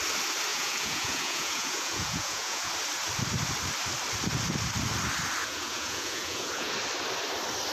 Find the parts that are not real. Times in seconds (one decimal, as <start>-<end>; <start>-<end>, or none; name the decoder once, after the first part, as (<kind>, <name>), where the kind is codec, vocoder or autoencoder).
0.5-2.7 (vocoder, Vocos); 5.4-6.7